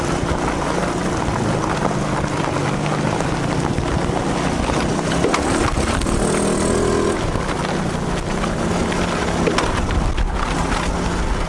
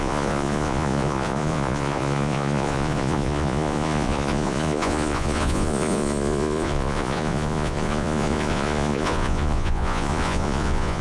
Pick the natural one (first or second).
first